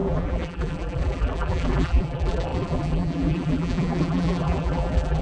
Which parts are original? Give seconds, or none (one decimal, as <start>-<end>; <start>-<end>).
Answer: none